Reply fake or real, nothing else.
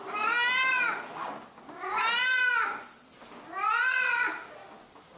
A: real